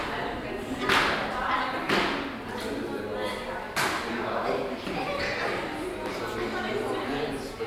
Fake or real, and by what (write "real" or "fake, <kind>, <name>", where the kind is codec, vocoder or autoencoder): real